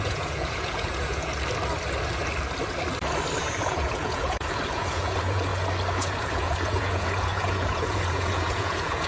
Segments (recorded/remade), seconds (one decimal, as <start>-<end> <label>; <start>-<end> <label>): 0.0-1.3 remade; 1.3-3.4 recorded; 3.4-5.5 remade; 5.5-6.0 recorded; 6.0-9.1 remade